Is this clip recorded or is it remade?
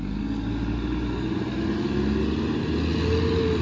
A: recorded